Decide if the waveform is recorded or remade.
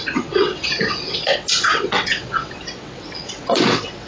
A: remade